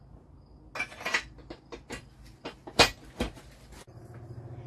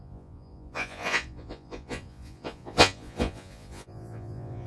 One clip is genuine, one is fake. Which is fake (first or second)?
second